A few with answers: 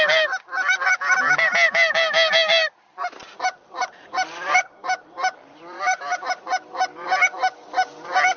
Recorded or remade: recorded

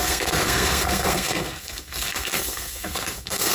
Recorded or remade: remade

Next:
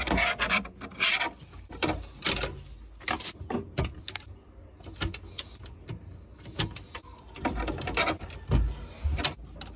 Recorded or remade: recorded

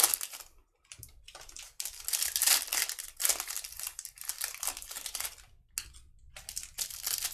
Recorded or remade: recorded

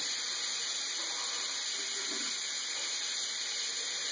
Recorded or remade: recorded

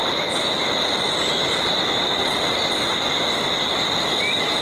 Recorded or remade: recorded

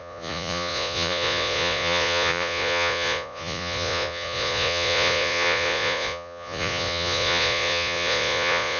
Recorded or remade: remade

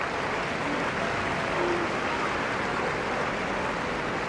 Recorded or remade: remade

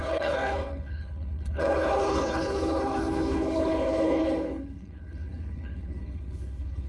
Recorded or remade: remade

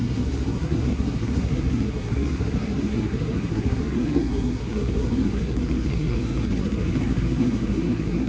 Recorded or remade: remade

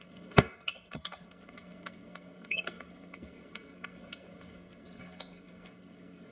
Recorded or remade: remade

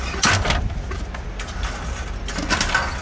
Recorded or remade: recorded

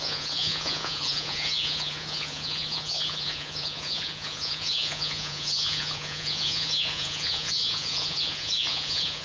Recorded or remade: remade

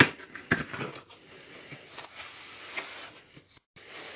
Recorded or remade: recorded